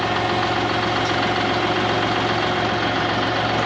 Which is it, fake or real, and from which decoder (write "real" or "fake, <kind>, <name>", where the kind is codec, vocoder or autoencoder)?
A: real